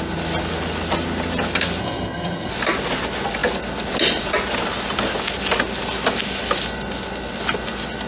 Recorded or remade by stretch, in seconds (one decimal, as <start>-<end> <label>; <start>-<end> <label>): 0.0-1.8 recorded; 1.8-2.5 remade; 2.5-8.1 recorded